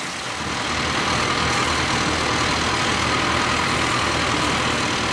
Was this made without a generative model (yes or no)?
yes